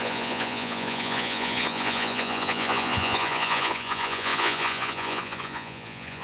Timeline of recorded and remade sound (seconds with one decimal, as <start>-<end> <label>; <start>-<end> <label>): 0.0-6.2 remade